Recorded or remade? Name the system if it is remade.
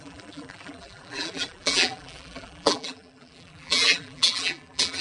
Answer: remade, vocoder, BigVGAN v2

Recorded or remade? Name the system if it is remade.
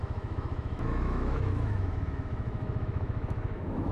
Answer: remade, autoencoder, DAC-VAE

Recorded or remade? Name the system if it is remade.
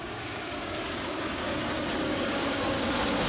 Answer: remade, codec, DAC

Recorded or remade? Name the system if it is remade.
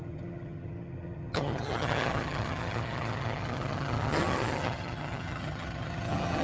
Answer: remade, vocoder, HiFi-GAN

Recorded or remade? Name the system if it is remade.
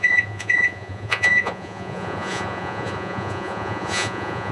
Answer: remade, vocoder, Vocos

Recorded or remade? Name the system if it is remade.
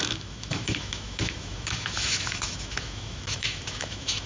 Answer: remade, autoencoder, DAC-VAE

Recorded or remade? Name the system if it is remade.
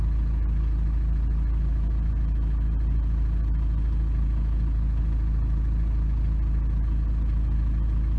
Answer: recorded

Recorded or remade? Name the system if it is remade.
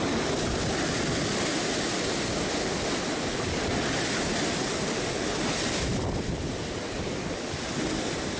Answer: recorded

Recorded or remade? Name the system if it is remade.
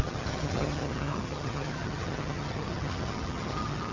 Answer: remade, vocoder, HiFi-GAN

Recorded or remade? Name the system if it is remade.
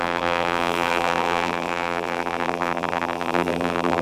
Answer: remade, vocoder, BigVGAN v2